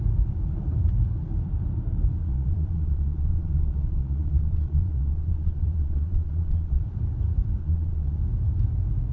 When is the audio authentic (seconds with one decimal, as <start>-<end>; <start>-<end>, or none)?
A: 0.0-2.2; 6.8-7.6; 8.2-9.1